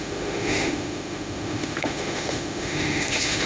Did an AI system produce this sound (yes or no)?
yes